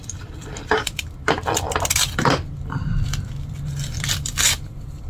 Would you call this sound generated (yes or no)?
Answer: yes